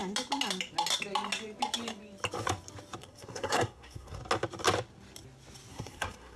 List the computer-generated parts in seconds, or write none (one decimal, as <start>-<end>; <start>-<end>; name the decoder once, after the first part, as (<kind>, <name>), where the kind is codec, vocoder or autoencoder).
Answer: 3.0-4.2 (codec, SNAC); 5.7-6.4

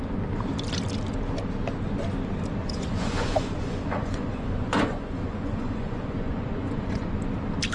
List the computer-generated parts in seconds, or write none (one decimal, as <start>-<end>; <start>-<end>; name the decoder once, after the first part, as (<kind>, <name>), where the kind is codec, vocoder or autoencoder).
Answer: 2.6-7.2 (vocoder, Vocos)